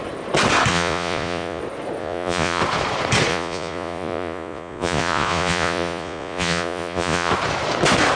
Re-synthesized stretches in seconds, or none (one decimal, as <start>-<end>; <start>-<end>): 0.7-1.6; 2.0-2.6; 3.3-7.3